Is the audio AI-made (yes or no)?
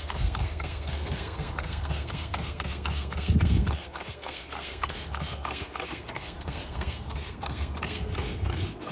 yes